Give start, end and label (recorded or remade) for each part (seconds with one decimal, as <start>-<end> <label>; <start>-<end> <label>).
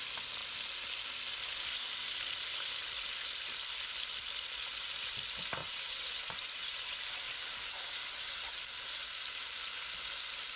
0.0-5.6 recorded; 5.6-7.0 remade; 7.0-10.6 recorded